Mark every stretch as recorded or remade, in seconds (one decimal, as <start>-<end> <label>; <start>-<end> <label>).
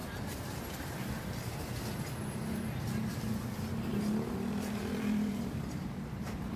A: 0.0-3.9 recorded; 3.9-6.6 remade